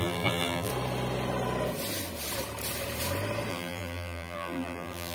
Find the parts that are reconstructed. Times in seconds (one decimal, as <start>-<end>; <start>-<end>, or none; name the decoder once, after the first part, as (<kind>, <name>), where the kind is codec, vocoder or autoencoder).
0.0-0.7 (vocoder, BigVGAN v2); 3.5-5.1

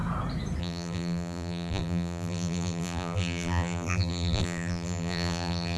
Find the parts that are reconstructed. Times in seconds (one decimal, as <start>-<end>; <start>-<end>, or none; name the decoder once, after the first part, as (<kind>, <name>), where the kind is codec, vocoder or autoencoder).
0.6-5.8 (vocoder, BigVGAN v2)

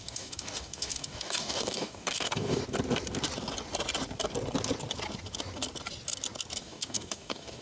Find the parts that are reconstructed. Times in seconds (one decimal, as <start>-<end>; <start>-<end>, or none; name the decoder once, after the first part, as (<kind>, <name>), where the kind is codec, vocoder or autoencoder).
0.0-2.6 (codec, DAC); 6.6-7.6